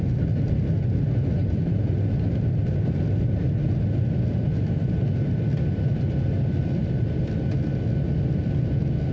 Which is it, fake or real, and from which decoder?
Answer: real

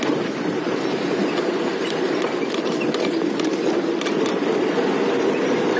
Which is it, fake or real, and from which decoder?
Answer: fake, vocoder, BigVGAN v2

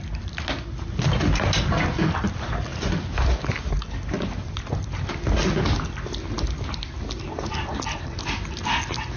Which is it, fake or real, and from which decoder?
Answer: real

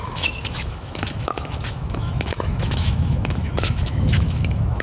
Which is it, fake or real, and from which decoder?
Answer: fake, autoencoder, DAC-VAE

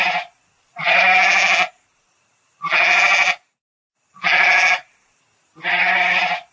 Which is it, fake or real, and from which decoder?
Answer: real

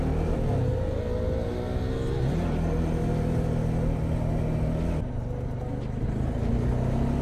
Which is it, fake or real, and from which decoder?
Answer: real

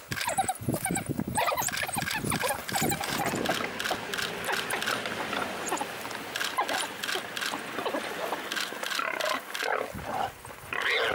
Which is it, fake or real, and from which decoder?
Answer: real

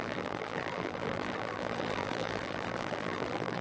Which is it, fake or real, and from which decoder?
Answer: fake, vocoder, BigVGAN v2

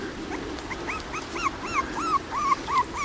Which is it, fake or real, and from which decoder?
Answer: real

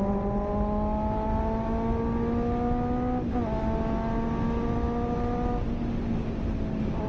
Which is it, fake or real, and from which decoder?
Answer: real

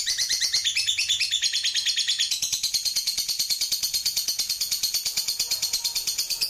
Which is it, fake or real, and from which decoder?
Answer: fake, vocoder, Vocos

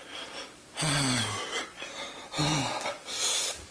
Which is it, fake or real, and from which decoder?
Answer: real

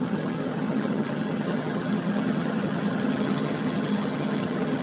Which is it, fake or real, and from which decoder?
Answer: fake, vocoder, HiFi-GAN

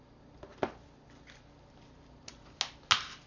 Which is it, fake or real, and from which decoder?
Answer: real